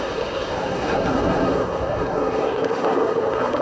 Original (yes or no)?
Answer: no